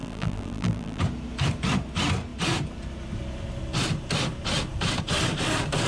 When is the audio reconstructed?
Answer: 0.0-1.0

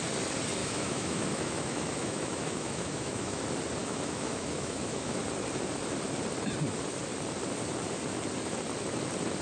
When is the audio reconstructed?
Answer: 0.6-3.4; 3.8-5.2

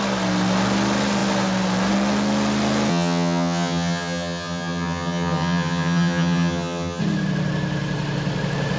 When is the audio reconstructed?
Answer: 2.9-7.0

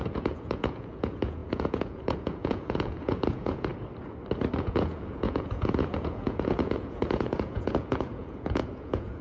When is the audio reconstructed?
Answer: 0.0-3.7; 4.6-9.2

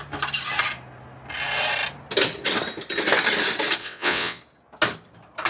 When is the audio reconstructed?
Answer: 3.8-4.4